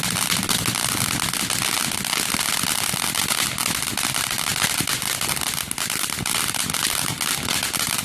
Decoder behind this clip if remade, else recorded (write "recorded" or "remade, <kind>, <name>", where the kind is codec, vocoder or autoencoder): recorded